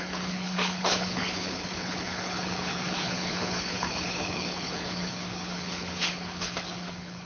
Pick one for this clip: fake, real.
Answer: fake